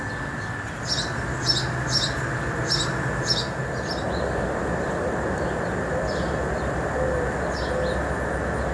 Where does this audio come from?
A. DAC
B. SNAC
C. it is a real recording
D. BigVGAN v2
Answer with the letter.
C